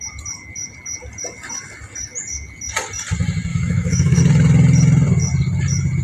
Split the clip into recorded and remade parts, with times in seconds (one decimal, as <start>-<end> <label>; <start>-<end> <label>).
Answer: 0.0-3.5 recorded; 3.5-4.2 remade; 4.2-6.0 recorded

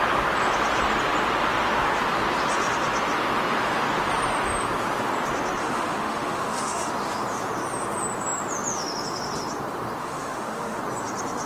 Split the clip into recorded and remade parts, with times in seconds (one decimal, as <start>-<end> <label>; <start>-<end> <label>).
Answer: 0.0-5.6 recorded; 5.6-6.9 remade; 6.9-10.0 recorded; 10.0-10.8 remade; 10.8-11.5 recorded